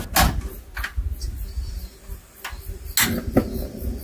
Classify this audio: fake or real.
real